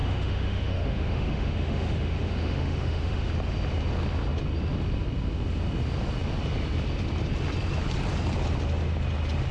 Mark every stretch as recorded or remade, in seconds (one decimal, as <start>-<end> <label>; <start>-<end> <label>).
0.0-3.3 remade; 3.3-9.5 recorded